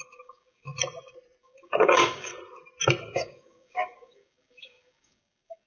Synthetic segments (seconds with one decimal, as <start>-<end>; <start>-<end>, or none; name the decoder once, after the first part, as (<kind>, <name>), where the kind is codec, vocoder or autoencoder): 0.0-0.7 (codec, DAC); 1.4-2.3; 3.0-5.7